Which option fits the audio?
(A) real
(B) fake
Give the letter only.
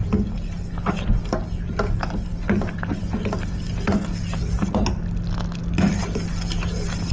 A